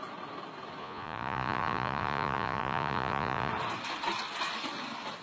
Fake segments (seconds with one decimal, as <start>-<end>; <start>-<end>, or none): 0.8-3.5